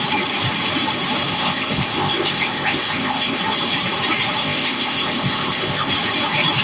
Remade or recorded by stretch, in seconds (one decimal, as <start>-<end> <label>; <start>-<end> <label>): 0.0-1.3 recorded; 1.3-3.4 remade; 3.4-4.4 recorded; 4.4-5.9 remade; 5.9-6.6 recorded